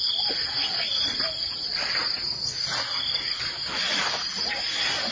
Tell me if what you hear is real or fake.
real